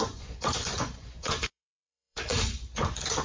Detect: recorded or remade remade